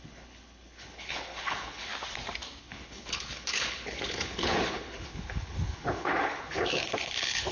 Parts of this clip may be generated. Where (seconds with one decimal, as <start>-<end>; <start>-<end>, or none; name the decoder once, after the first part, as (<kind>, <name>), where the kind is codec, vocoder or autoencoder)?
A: 0.0-1.9 (codec, HILCodec); 2.6-7.5